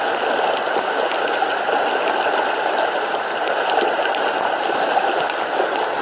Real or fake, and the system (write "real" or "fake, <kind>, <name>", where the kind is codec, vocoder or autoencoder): real